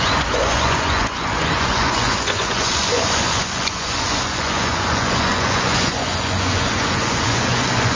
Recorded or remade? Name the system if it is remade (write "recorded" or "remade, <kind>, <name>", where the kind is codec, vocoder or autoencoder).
remade, vocoder, Vocos